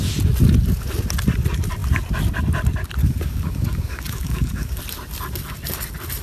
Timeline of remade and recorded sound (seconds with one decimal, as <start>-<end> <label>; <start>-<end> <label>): 0.0-3.0 recorded; 3.0-4.8 remade; 4.8-6.2 recorded